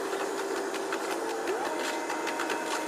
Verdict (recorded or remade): recorded